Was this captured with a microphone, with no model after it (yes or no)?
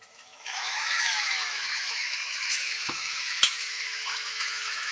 no